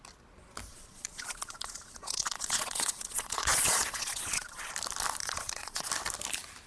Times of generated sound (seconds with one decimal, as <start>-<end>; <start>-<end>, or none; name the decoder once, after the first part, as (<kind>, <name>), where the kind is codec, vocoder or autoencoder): 0.7-4.7 (vocoder, Vocos); 5.2-5.9